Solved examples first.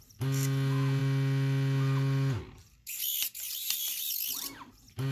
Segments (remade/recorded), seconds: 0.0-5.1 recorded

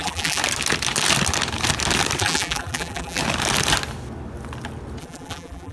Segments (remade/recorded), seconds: 0.0-0.4 remade; 0.4-2.2 recorded; 2.2-3.2 remade; 3.2-5.0 recorded; 5.0-5.7 remade

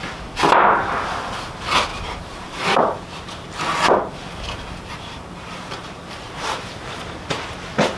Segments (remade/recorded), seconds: 0.0-1.9 recorded; 1.9-6.7 remade; 6.7-8.0 recorded